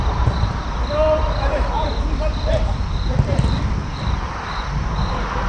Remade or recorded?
remade